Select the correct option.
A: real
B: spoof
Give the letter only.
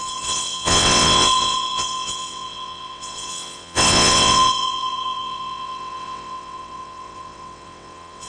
B